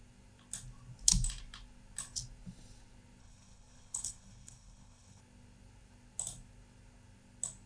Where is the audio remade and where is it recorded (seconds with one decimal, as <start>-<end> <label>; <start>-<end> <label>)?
0.0-3.2 recorded; 3.2-5.2 remade; 5.2-7.7 recorded